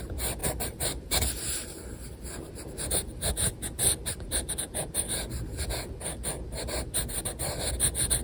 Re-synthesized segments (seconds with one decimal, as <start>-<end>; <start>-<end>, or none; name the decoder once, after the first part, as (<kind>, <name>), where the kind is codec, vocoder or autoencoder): 0.4-3.3 (vocoder, BigVGAN v2)